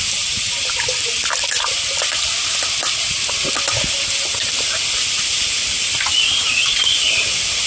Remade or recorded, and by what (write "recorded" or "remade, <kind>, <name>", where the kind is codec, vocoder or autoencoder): recorded